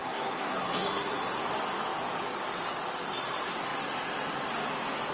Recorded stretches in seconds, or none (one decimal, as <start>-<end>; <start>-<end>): 1.4-5.1